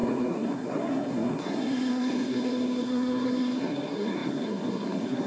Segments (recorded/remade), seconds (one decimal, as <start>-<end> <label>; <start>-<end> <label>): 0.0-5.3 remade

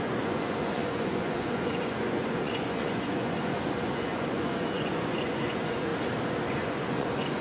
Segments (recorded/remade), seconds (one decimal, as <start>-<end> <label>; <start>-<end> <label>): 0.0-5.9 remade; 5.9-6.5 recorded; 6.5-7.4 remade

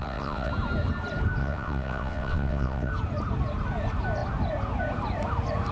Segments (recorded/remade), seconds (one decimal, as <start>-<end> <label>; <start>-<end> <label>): 0.0-0.5 remade; 0.5-1.4 recorded; 1.4-2.9 remade; 2.9-5.7 recorded

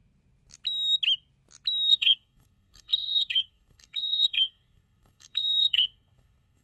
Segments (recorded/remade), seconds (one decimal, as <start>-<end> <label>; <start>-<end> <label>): 0.0-1.9 recorded; 1.9-6.6 remade

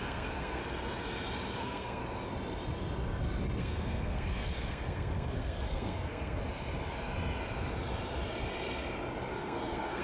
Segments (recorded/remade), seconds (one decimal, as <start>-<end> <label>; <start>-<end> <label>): 0.0-0.6 remade; 0.6-1.6 recorded; 1.6-2.0 remade; 2.0-3.6 recorded; 3.6-6.4 remade; 6.4-9.3 recorded; 9.3-10.0 remade

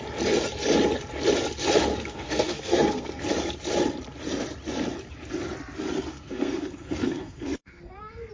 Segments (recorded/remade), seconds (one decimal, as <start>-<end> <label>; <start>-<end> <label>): 0.0-1.9 recorded; 1.9-3.2 remade; 3.2-6.1 recorded; 6.1-8.3 remade